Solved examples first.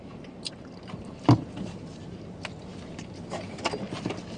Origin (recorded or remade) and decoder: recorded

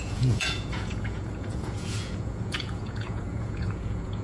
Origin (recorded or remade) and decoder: remade, vocoder, Vocos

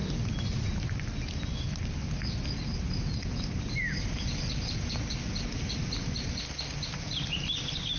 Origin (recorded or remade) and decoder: recorded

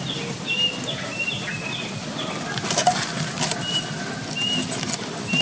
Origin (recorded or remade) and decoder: recorded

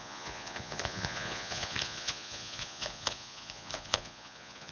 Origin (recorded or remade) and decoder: remade, vocoder, Vocos